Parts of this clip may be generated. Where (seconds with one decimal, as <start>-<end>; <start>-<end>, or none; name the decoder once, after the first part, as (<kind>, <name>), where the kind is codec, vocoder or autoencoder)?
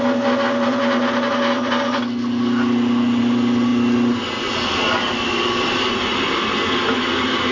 none